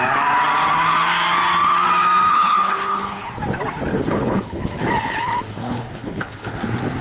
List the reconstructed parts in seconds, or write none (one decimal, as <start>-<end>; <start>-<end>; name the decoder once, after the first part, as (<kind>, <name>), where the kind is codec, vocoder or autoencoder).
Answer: 2.3-3.3 (codec, HILCodec); 3.9-4.6; 5.6-6.6